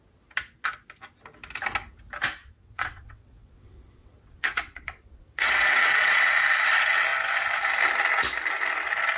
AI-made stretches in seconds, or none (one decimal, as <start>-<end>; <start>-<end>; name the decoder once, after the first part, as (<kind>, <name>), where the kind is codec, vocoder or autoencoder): 2.4-6.3 (vocoder, WaveNeXt)